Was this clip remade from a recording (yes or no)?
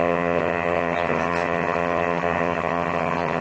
yes